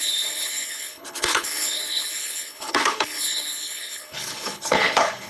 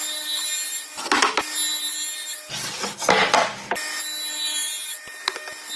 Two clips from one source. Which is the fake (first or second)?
first